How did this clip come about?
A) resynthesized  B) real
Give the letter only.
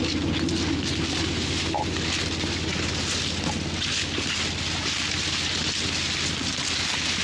B